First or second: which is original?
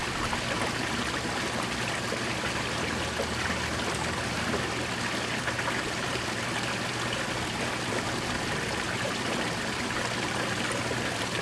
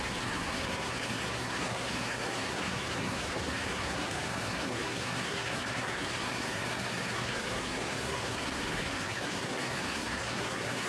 first